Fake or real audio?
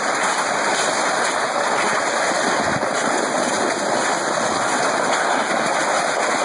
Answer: real